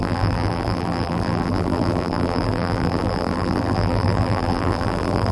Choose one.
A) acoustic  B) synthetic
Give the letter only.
B